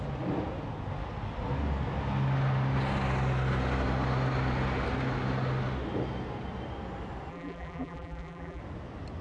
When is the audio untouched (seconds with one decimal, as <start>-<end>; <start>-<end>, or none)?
0.0-7.3; 8.6-9.2